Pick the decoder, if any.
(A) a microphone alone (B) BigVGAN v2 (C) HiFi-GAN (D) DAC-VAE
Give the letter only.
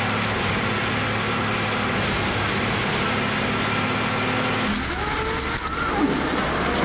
A